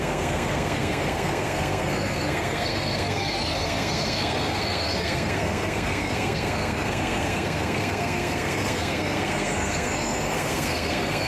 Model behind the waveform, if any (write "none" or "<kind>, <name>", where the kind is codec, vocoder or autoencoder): codec, SNAC